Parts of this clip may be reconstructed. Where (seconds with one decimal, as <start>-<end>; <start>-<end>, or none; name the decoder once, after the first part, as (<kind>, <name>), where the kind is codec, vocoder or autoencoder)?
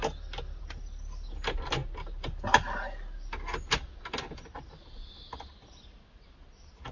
none